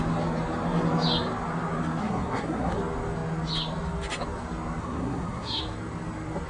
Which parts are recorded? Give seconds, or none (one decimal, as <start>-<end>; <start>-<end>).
0.0-2.0; 2.8-4.8; 5.6-6.5